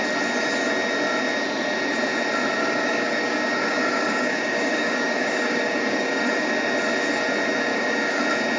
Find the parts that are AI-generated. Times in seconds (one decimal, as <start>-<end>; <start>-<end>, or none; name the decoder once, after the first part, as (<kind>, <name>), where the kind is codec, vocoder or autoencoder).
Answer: 2.6-6.5 (codec, DAC); 7.7-8.2